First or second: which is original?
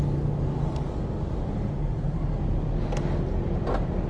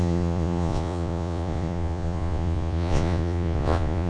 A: first